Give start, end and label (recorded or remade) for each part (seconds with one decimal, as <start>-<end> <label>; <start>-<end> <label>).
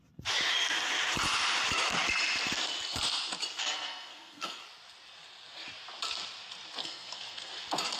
0.0-3.6 recorded; 3.6-4.6 remade; 4.6-6.8 recorded; 6.8-7.5 remade; 7.5-8.0 recorded